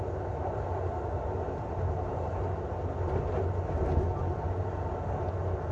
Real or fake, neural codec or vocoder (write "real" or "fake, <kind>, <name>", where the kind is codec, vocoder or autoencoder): real